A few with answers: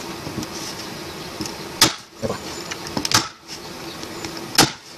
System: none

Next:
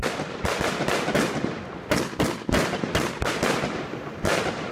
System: none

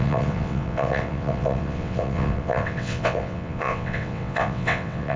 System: vocoder, WaveNeXt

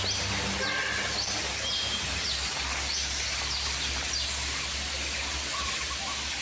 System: none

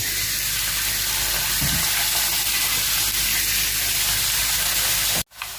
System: none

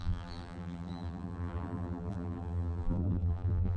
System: vocoder, BigVGAN v2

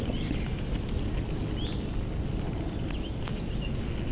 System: none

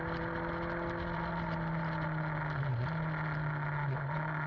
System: none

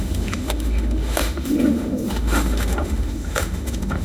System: autoencoder, DAC-VAE